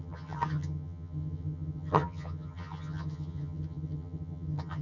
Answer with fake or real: fake